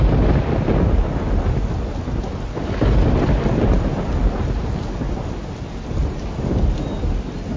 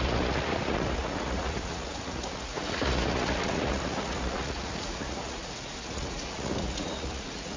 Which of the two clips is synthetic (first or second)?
second